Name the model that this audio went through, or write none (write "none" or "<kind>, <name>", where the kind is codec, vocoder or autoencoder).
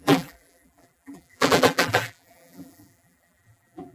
vocoder, BigVGAN v2